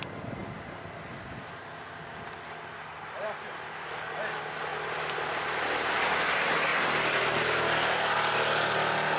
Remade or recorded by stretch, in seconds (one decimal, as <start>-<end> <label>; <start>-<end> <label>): 0.0-9.2 recorded